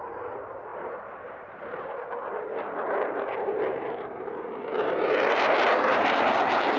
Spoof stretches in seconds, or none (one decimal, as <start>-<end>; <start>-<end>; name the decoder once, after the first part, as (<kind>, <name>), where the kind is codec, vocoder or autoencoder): 0.7-1.9 (vocoder, BigVGAN v2); 2.3-6.3